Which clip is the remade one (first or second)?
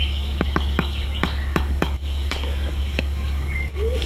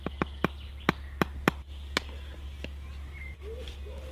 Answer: first